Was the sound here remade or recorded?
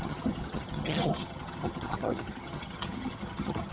remade